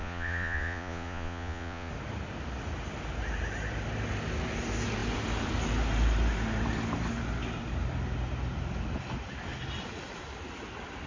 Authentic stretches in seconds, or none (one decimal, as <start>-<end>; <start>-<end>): 1.9-11.1